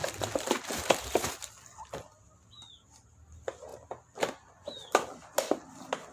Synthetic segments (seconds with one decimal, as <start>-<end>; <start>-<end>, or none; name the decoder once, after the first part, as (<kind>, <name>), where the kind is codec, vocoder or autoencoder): 0.0-1.3 (vocoder, BigVGAN v2)